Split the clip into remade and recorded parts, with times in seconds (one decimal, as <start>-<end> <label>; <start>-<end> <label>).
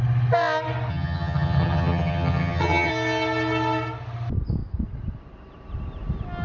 0.0-0.9 recorded; 0.9-2.9 remade; 2.9-6.4 recorded